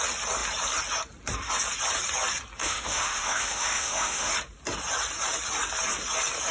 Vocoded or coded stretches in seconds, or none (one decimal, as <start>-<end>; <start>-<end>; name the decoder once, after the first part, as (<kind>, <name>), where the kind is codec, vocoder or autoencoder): 2.6-4.3 (autoencoder, DAC-VAE)